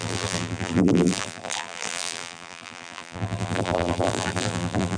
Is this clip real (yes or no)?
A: no